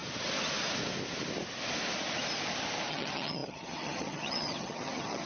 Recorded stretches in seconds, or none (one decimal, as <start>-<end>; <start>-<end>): 0.0-2.9